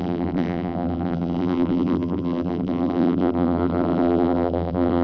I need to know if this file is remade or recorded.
remade